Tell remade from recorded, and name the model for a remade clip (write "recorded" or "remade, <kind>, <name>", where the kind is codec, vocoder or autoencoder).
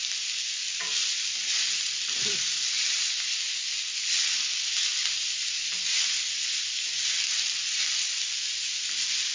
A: recorded